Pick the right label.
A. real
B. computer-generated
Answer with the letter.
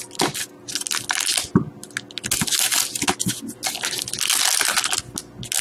A